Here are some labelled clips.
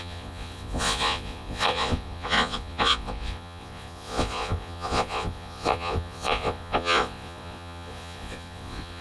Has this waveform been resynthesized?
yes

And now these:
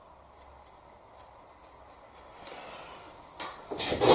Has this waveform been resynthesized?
no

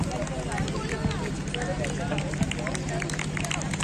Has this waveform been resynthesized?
no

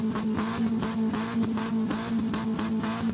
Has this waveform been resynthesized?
no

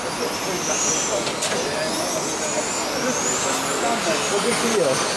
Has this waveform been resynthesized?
no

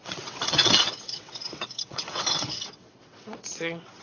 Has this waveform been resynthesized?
yes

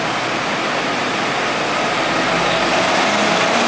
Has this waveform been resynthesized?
no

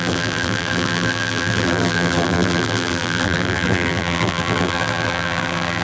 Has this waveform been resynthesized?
yes